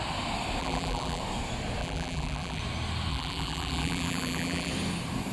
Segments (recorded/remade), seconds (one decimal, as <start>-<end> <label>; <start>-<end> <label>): 0.0-0.6 recorded; 0.6-1.2 remade; 1.2-1.8 recorded; 1.8-2.6 remade; 2.6-3.1 recorded; 3.1-4.7 remade; 4.7-5.3 recorded